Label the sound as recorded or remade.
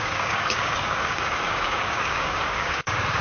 remade